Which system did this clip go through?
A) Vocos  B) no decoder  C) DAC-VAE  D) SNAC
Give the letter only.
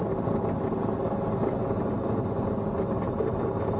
B